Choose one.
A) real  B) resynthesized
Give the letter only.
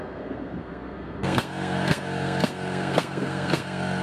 B